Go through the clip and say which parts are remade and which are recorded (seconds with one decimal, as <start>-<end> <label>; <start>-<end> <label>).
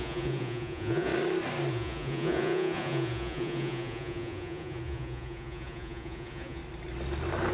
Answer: 0.0-1.1 remade; 1.1-1.7 recorded; 1.7-6.6 remade; 6.6-7.5 recorded